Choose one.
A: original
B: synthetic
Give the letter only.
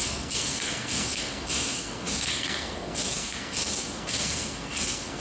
B